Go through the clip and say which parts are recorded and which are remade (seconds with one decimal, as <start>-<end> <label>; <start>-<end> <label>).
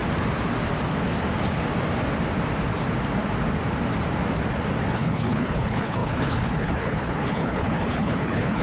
0.0-4.9 recorded; 4.9-8.6 remade